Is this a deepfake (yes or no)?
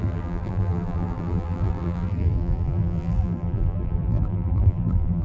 yes